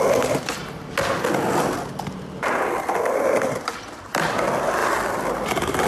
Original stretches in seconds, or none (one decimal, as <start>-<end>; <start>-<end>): 0.0-5.9